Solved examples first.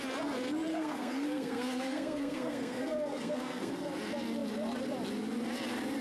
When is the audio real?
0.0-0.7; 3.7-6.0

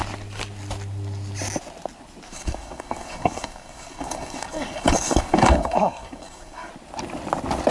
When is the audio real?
0.0-2.3; 6.7-7.7

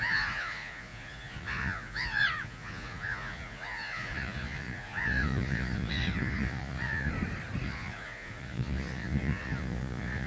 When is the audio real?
7.1-7.6

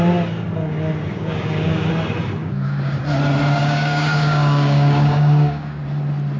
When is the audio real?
0.0-1.1; 1.9-2.4; 3.0-3.6; 5.8-6.4

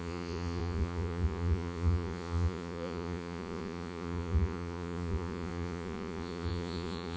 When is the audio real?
none

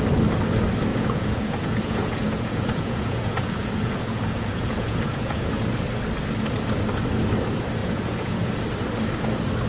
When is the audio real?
0.0-0.9; 5.7-7.8; 8.5-9.7

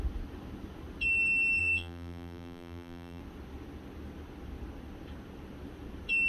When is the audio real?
0.0-1.6; 3.2-6.3